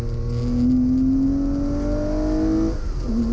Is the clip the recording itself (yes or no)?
yes